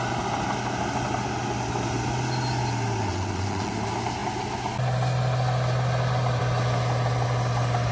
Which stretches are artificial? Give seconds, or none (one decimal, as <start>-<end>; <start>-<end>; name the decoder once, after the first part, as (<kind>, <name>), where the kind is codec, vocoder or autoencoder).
3.1-3.7 (vocoder, WaveNeXt)